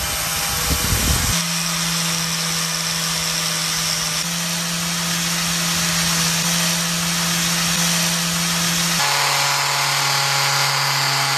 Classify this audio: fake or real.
real